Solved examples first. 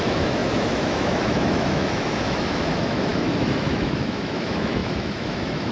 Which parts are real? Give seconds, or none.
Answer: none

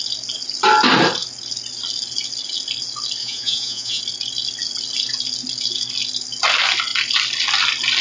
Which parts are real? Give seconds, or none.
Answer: 0.0-3.2; 4.0-8.0

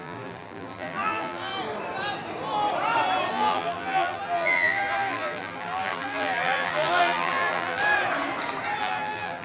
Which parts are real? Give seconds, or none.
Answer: 1.5-3.3; 7.8-8.8

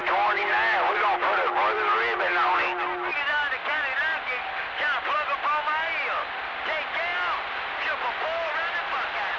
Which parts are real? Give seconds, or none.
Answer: 0.0-9.4

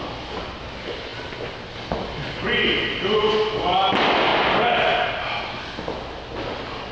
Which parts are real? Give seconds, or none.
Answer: 0.0-6.9

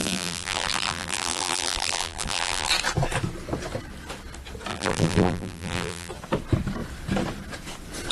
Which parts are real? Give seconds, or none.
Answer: 2.7-4.7; 6.1-8.1

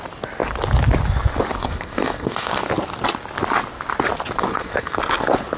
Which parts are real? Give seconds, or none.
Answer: 0.0-1.6; 2.7-4.5; 5.0-5.6